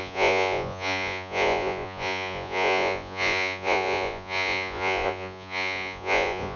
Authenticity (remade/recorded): remade